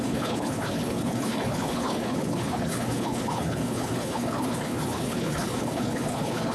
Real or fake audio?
fake